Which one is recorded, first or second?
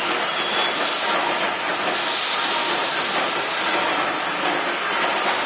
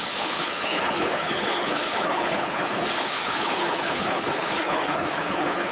first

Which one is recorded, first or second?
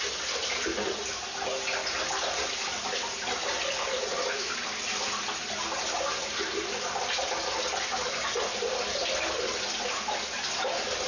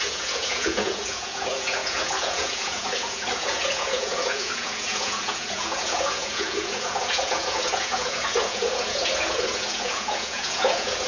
first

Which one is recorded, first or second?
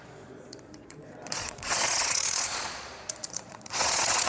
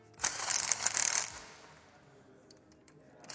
second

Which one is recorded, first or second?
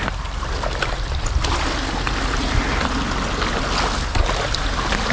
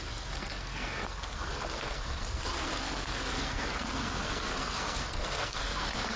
first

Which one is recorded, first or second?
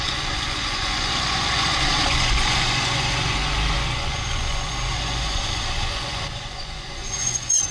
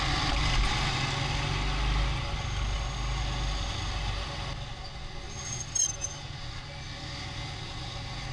second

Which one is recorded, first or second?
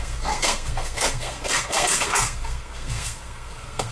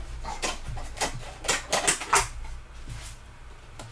second